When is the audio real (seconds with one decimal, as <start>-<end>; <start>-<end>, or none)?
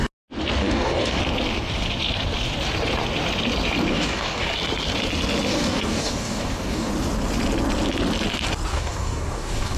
0.0-0.6; 1.2-3.9; 4.5-5.5; 6.9-8.7